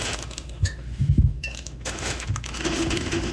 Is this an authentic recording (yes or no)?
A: no